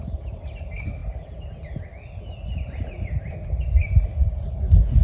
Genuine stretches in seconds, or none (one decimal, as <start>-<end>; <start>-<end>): 0.0-5.0